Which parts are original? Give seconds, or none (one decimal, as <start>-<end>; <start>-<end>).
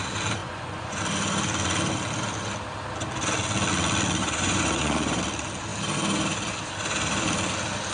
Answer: 0.0-0.4; 1.0-4.2; 5.2-7.9